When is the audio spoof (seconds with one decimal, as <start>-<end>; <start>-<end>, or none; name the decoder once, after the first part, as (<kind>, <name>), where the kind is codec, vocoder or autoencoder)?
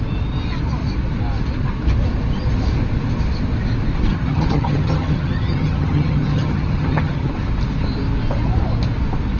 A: 4.1-7.3 (vocoder, HiFi-GAN)